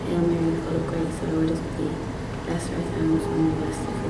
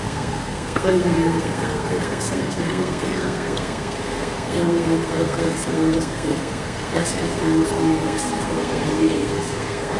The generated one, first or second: second